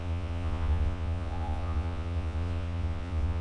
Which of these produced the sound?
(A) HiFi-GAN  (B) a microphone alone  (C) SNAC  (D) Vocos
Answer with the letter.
D